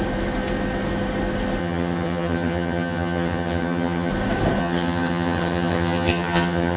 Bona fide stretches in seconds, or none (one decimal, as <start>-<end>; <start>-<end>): 0.0-1.6; 4.1-4.6